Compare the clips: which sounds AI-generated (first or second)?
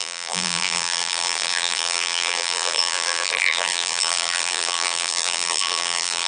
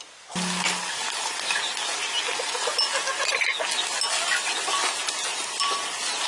first